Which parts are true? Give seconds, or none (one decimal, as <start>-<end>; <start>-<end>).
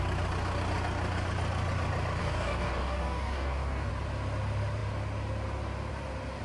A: 0.0-2.2; 3.9-6.4